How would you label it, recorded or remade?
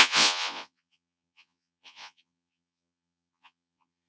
remade